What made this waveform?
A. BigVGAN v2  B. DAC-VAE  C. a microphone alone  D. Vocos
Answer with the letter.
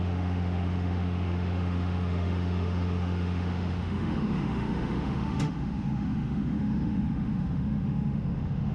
B